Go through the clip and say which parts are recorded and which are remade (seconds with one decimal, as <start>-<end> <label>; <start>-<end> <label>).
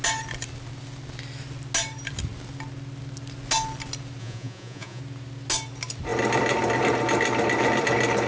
0.0-4.2 recorded; 4.2-5.0 remade; 5.0-8.3 recorded